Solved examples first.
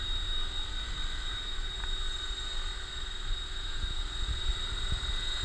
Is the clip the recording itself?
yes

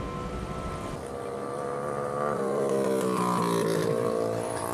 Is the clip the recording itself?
yes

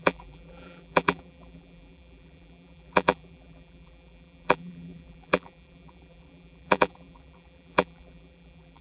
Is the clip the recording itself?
no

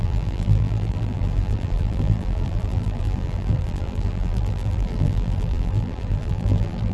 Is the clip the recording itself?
no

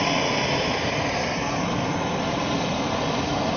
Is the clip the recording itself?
yes